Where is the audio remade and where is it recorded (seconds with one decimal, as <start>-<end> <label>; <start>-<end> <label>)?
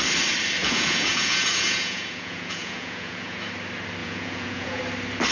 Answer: 0.0-0.6 recorded; 0.6-3.5 remade; 3.5-4.0 recorded; 4.0-4.8 remade; 4.8-5.3 recorded